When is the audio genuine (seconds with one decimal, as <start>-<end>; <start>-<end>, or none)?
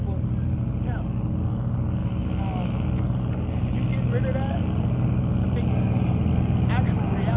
0.0-2.0; 3.0-7.4